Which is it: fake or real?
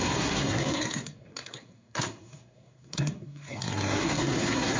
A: fake